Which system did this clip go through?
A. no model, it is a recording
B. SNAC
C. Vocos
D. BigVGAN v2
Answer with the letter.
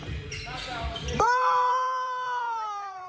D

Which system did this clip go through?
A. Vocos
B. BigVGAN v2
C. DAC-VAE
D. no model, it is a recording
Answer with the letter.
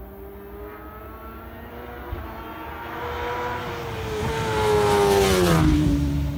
D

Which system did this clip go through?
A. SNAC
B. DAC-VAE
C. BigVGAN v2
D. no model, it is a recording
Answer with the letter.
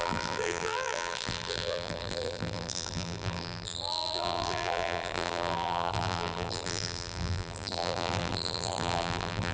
C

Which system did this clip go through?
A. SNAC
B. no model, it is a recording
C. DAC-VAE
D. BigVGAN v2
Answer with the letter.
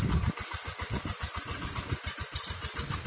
B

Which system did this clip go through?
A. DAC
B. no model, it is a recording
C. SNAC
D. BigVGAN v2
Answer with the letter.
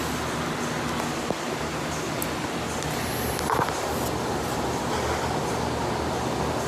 B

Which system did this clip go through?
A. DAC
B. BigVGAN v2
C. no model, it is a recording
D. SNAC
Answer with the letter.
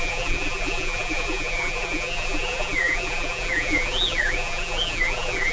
B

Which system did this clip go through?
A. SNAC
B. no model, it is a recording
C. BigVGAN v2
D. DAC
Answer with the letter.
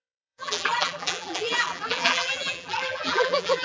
C